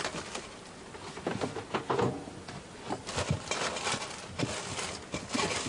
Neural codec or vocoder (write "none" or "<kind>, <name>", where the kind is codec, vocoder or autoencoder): none